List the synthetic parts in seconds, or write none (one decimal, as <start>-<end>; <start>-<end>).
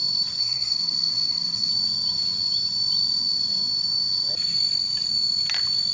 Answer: 0.4-1.7